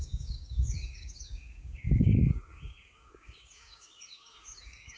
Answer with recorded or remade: remade